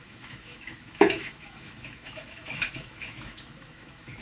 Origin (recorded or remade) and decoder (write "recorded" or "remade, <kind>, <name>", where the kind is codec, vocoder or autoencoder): remade, autoencoder, DAC-VAE